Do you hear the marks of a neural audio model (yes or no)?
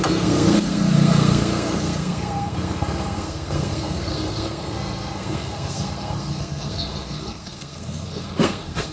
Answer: yes